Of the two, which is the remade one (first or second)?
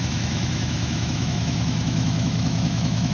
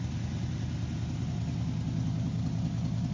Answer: first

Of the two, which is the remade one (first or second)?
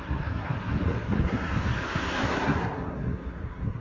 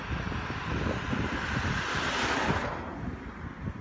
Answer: first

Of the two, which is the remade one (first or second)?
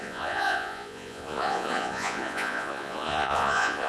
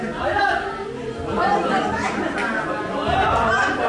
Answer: first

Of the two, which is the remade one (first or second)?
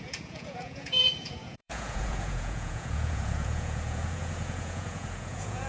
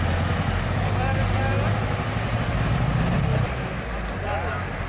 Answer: first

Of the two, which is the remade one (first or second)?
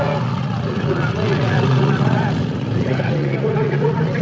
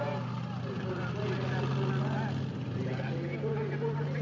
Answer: first